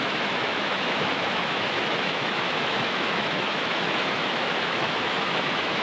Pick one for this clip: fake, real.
fake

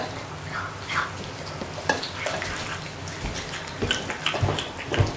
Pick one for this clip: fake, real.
real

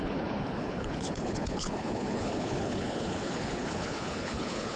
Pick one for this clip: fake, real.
fake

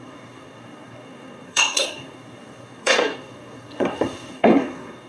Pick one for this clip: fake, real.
fake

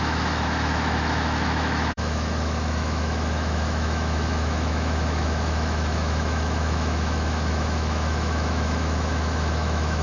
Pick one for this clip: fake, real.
fake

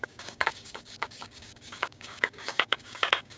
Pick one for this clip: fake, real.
fake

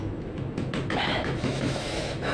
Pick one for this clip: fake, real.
fake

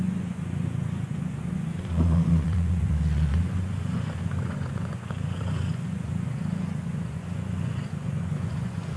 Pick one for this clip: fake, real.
fake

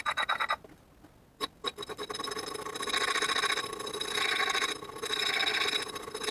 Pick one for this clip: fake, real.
real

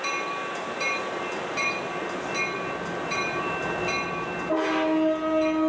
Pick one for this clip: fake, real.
real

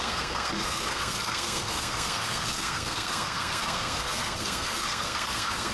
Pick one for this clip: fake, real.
fake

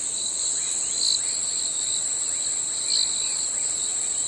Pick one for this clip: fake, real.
real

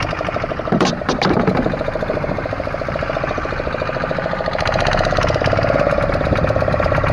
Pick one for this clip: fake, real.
fake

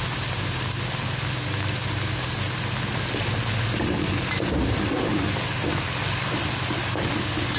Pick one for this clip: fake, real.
real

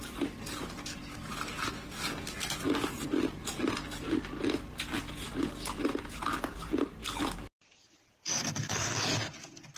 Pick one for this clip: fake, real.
real